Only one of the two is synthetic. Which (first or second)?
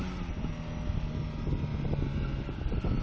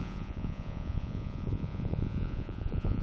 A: second